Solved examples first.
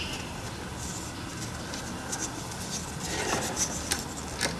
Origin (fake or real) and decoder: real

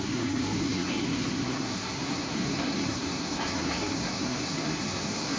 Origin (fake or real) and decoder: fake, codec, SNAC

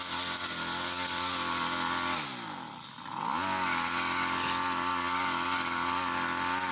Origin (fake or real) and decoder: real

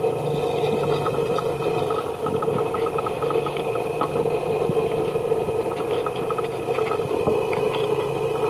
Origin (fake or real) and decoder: real